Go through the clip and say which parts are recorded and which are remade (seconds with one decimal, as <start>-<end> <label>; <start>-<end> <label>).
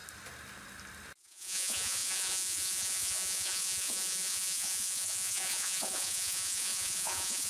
0.0-1.2 recorded; 1.2-7.5 remade